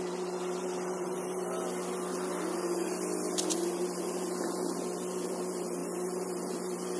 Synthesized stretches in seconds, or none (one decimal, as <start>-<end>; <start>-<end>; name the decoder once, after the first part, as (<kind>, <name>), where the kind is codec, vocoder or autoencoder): none